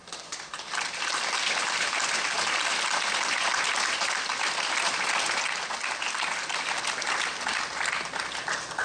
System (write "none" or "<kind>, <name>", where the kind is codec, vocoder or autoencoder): none